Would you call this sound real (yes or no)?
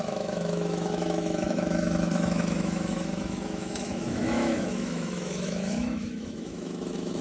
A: no